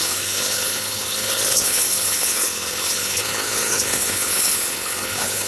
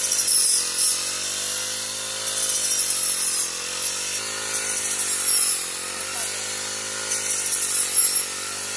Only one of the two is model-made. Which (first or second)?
first